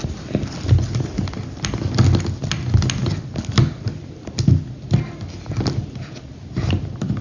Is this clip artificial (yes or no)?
no